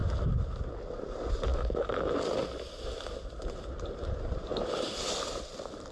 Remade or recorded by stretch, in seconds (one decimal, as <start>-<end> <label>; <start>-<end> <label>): 0.0-1.5 recorded; 1.5-2.2 remade; 2.2-5.9 recorded